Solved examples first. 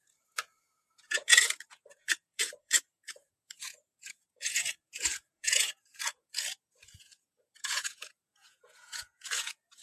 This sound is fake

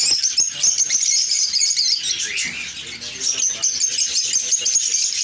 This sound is real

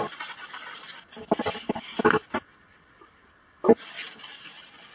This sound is real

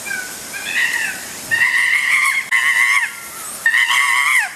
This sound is real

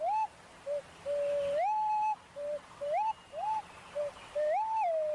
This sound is real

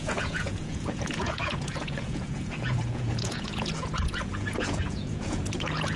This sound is fake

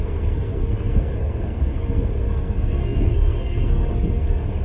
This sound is fake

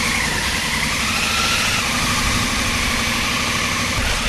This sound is real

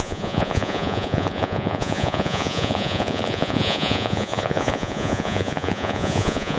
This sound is fake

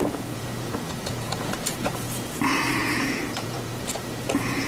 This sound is fake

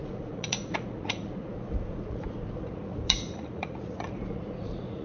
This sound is fake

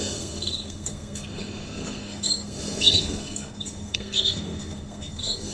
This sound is fake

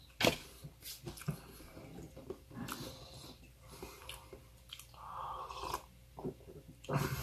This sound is real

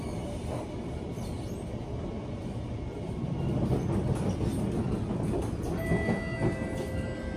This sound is real